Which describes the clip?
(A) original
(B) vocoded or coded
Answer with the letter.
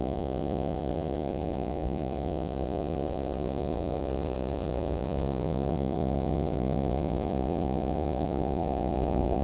B